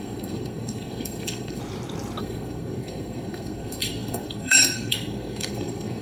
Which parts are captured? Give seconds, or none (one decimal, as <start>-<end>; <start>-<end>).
1.6-2.2